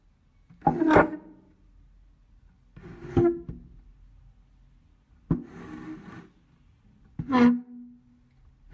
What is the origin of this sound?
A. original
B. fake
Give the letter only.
A